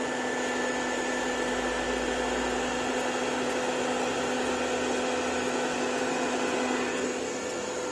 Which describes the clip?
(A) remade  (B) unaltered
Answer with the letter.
B